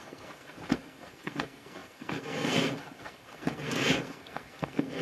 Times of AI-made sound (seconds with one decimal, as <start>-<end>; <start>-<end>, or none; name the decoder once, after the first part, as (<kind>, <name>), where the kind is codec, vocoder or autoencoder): 0.0-5.0 (codec, SNAC)